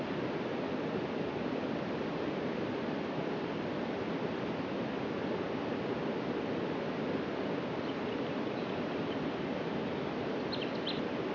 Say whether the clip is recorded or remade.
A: recorded